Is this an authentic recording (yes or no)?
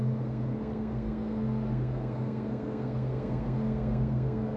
no